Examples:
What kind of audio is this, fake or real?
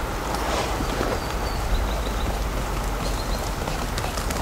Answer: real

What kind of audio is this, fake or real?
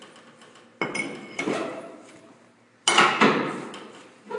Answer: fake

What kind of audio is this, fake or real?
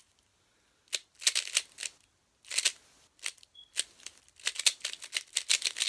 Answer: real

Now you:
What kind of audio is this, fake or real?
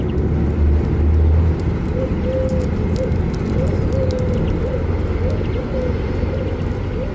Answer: real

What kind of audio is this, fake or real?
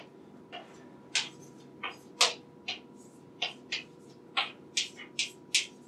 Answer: real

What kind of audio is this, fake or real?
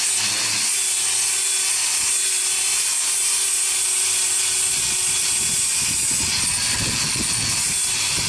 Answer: real